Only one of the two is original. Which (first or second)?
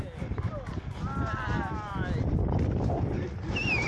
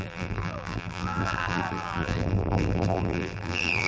first